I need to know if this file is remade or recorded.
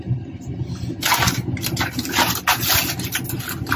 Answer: recorded